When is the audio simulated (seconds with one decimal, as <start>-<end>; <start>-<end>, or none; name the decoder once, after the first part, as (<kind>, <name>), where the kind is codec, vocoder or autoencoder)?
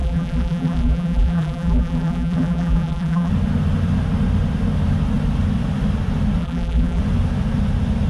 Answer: 0.0-3.3 (vocoder, BigVGAN v2); 6.4-7.0